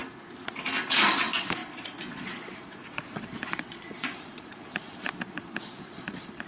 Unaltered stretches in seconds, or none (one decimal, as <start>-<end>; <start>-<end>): 0.0-1.2